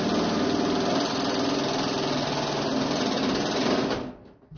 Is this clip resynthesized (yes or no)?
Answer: no